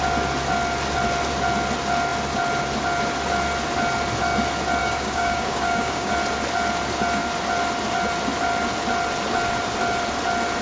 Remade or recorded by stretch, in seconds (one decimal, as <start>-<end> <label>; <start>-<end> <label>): 0.0-4.8 recorded; 4.8-6.1 remade; 6.1-10.6 recorded